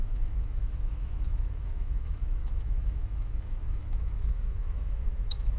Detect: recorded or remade remade